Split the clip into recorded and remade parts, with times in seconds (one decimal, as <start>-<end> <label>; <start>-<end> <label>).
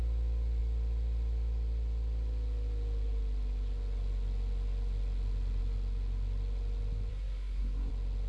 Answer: 0.0-7.1 recorded; 7.1-7.9 remade; 7.9-8.3 recorded